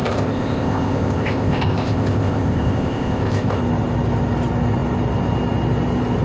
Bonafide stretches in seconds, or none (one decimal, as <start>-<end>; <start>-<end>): 3.6-6.2